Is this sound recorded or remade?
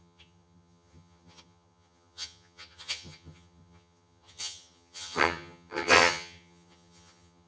remade